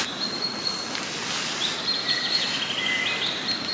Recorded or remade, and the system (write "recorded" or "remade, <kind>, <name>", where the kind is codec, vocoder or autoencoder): recorded